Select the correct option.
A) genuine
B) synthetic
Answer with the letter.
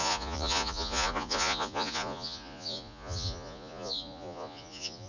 B